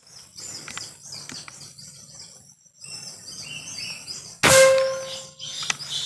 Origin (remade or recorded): recorded